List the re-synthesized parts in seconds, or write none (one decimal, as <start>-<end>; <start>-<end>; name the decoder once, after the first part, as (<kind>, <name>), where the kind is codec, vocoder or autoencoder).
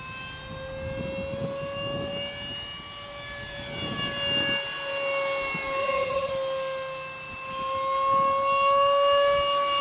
5.8-6.3 (vocoder, HiFi-GAN)